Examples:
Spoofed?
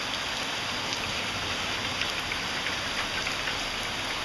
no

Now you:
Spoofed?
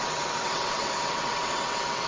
yes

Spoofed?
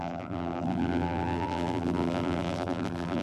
yes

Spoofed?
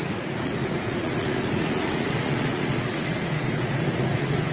yes